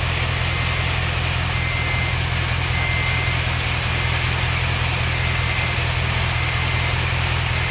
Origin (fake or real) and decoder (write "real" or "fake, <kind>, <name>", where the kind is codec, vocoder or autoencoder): real